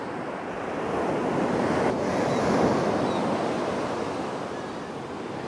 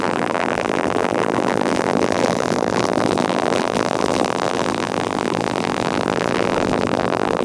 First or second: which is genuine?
first